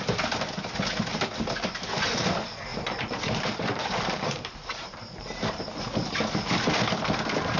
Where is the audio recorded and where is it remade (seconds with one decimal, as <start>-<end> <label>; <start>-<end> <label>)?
0.0-2.7 recorded; 2.7-5.8 remade; 5.8-7.6 recorded